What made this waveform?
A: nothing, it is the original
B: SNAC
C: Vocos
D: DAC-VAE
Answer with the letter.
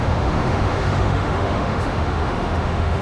D